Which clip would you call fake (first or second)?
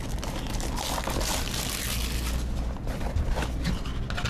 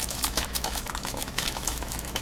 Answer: second